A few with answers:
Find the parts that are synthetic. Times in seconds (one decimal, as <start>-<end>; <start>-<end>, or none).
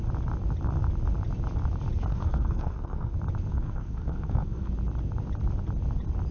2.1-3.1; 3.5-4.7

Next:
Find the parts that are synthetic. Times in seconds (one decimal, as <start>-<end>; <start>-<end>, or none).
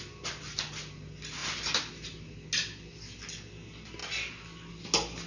none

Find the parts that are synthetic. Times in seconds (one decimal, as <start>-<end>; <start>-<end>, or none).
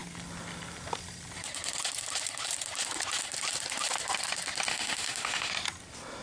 4.7-5.5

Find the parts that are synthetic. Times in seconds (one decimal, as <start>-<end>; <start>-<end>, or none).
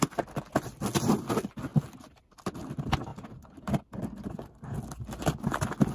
none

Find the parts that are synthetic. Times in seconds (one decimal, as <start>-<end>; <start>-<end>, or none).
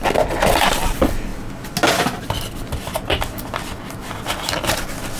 0.5-1.3; 1.9-3.1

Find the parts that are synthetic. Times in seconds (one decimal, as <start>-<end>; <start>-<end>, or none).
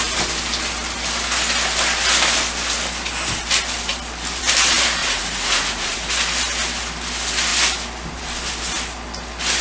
5.0-6.1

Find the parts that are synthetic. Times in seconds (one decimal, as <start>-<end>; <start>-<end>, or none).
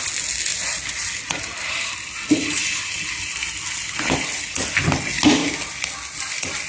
none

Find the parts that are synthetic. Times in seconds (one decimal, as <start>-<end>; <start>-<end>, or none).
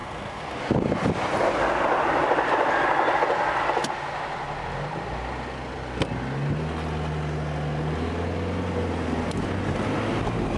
0.0-0.6